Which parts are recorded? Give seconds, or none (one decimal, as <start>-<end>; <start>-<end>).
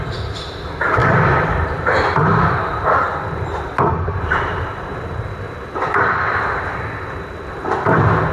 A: 0.0-1.0; 6.0-8.3